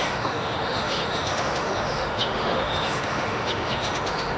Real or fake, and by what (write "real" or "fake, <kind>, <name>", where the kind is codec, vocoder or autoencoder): fake, autoencoder, DAC-VAE